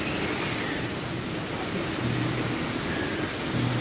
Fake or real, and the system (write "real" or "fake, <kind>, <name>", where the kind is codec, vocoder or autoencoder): real